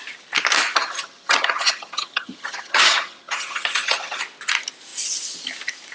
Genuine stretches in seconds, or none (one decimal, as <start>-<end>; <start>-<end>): 0.0-0.8; 4.2-5.9